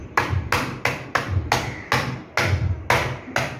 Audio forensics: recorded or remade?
recorded